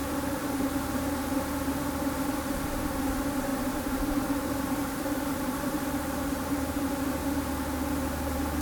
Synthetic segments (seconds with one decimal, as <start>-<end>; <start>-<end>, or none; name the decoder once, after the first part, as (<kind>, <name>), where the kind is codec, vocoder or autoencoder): 0.0-1.4 (vocoder, BigVGAN v2); 3.5-6.9